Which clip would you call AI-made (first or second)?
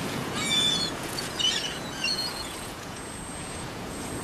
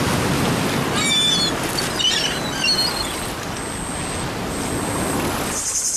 first